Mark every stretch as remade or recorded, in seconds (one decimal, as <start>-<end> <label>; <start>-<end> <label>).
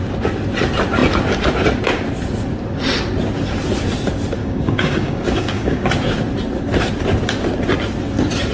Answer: 0.0-4.4 recorded; 4.4-5.9 remade; 5.9-8.5 recorded